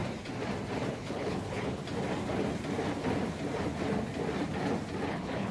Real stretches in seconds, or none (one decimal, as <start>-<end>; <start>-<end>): 0.0-0.9; 1.8-5.1